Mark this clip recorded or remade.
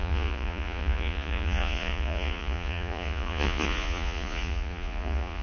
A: remade